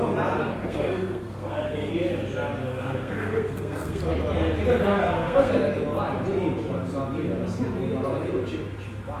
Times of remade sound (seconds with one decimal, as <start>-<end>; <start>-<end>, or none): 0.4-1.9; 2.7-4.0; 5.0-5.5